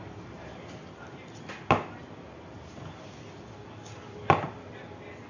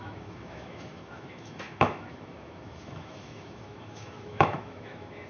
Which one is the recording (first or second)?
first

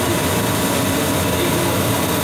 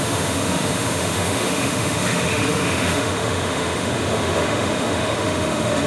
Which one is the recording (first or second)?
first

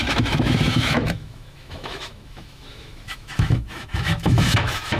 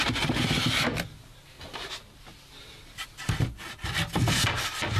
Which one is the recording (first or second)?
second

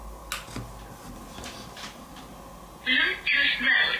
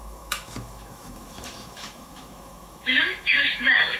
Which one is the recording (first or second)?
first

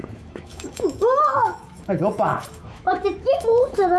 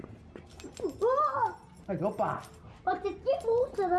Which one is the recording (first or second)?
second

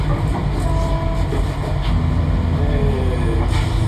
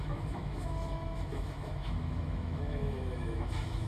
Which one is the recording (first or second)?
first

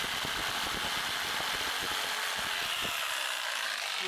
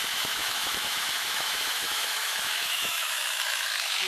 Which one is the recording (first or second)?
first